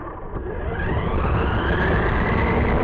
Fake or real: real